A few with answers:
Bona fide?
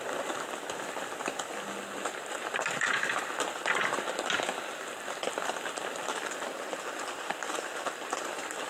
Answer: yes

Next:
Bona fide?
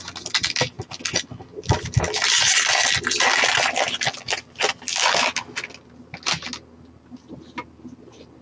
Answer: yes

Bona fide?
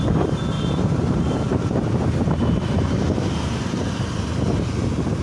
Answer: no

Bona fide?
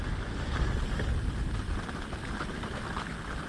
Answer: yes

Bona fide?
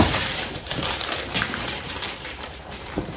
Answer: no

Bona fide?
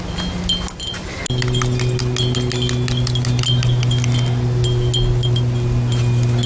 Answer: yes